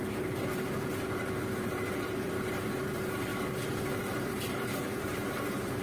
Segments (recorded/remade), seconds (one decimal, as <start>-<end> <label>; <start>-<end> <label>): 0.0-3.3 remade; 3.3-3.9 recorded; 3.9-5.8 remade